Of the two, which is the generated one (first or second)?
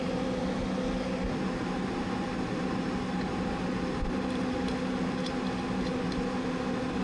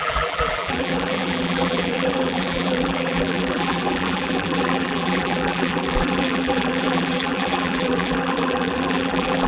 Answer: second